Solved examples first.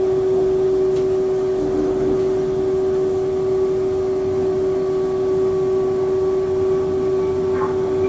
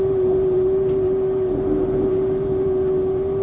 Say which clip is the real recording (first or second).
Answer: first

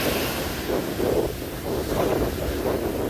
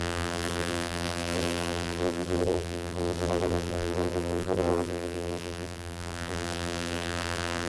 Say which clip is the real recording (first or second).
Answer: first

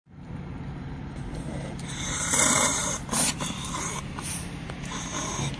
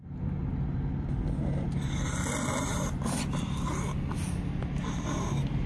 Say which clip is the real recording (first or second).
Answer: second